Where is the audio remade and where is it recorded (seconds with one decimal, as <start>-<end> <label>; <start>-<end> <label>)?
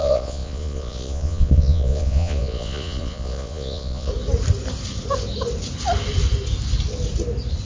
0.0-4.1 remade; 4.1-7.7 recorded